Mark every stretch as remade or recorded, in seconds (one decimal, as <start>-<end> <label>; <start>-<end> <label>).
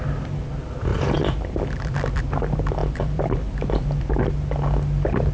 0.0-0.9 recorded; 0.9-2.2 remade; 2.2-2.8 recorded; 2.8-4.0 remade; 4.0-5.3 recorded